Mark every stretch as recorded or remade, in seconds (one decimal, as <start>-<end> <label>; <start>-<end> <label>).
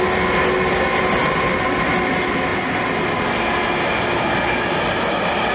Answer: 0.0-5.5 recorded